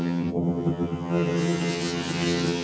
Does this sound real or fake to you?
fake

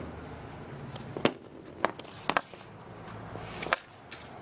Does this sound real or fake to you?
real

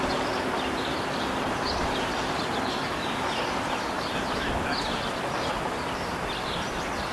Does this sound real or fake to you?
real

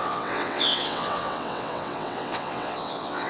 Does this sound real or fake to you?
fake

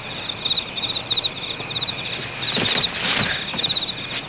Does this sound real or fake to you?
real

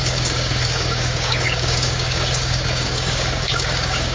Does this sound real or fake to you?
fake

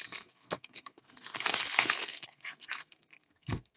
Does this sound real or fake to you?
fake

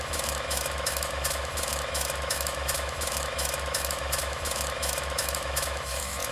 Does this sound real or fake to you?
fake